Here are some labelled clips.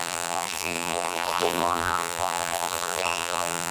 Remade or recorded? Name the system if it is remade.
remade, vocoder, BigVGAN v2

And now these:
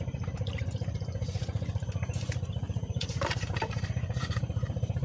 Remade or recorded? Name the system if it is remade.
remade, vocoder, BigVGAN v2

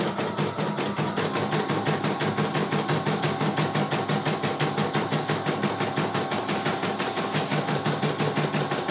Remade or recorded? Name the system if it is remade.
recorded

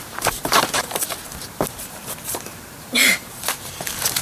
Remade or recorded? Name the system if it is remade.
remade, vocoder, BigVGAN v2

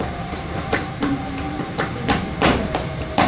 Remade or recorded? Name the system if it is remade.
remade, vocoder, BigVGAN v2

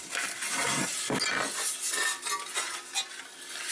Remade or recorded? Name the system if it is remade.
recorded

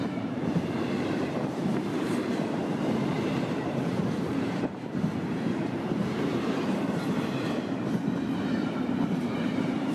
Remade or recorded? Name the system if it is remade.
remade, vocoder, BigVGAN v2